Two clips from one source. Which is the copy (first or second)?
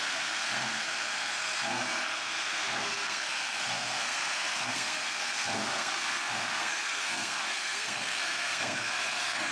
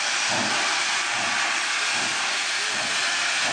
first